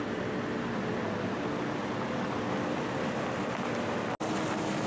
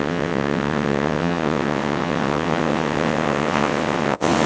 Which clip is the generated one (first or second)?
second